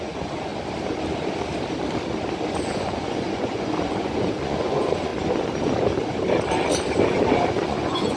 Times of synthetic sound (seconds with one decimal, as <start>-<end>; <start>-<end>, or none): 0.0-0.5; 2.6-5.1; 7.5-8.2

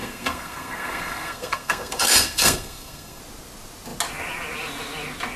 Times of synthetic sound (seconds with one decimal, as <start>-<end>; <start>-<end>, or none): 0.0-3.2

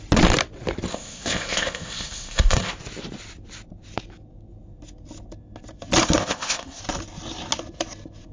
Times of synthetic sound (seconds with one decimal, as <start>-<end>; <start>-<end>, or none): 0.9-2.7; 6.2-6.8

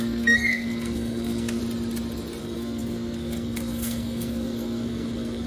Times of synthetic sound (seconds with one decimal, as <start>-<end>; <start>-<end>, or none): 0.0-1.6; 2.4-5.5

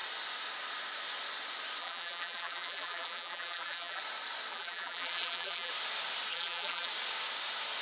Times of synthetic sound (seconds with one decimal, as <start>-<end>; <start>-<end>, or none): 1.8-4.0; 4.5-5.7; 6.3-6.9

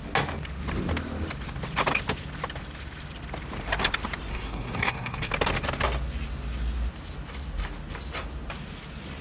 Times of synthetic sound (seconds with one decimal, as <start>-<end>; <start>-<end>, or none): 4.3-5.3

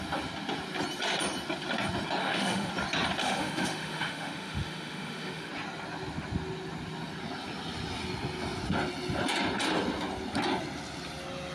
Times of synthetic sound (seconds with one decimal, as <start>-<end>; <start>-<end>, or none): 2.2-2.7; 3.2-5.5

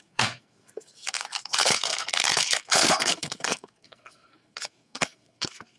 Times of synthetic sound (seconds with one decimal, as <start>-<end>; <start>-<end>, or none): 0.0-5.8